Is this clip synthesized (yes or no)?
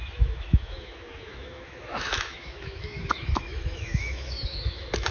yes